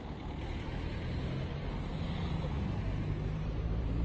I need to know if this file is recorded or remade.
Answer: recorded